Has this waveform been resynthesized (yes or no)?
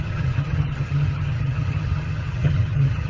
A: yes